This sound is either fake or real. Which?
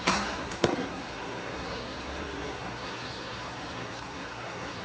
fake